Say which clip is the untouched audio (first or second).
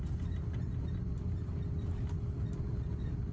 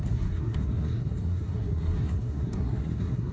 first